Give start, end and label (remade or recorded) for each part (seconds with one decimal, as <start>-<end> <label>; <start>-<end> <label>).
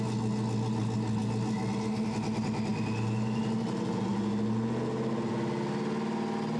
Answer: 0.0-6.6 recorded